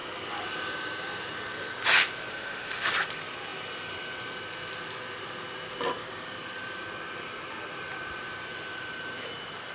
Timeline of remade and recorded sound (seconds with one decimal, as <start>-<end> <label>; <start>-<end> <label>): 0.0-2.3 recorded; 2.3-2.9 remade; 2.9-9.7 recorded